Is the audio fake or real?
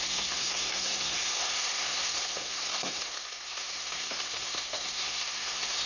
fake